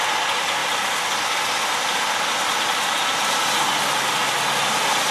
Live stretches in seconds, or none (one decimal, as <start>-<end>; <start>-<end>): 0.0-5.1